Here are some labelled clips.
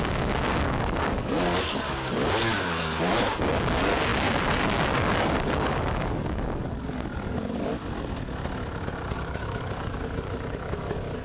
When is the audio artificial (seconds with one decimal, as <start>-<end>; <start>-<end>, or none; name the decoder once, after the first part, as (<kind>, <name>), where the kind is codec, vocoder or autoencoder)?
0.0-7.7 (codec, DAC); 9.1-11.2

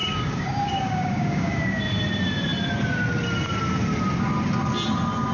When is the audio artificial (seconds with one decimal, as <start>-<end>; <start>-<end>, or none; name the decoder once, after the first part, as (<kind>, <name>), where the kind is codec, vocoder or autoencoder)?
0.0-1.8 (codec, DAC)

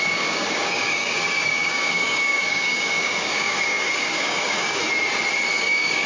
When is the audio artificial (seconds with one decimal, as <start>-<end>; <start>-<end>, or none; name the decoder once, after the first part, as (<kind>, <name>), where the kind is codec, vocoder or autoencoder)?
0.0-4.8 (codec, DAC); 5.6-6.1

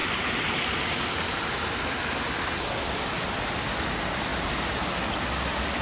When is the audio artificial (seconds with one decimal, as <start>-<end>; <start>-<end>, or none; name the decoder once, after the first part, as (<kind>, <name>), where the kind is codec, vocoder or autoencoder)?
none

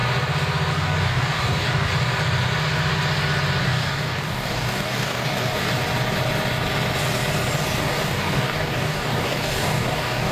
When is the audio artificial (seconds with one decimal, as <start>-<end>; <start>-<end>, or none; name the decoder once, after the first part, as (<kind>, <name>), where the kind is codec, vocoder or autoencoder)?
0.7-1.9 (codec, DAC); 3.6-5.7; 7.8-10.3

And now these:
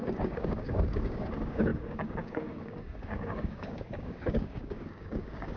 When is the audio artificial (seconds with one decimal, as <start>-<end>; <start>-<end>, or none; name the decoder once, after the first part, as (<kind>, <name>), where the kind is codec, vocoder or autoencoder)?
0.0-5.6 (codec, DAC)